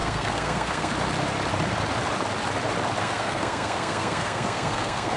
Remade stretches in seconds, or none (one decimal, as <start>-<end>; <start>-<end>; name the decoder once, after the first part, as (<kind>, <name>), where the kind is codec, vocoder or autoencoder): 0.0-0.9 (codec, SNAC); 3.0-5.2